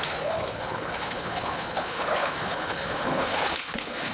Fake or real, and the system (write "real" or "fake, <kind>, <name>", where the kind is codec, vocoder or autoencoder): fake, codec, HILCodec